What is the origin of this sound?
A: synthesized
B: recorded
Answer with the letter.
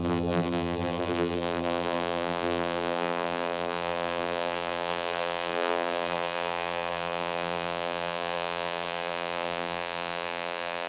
A